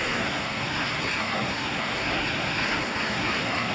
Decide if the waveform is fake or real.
fake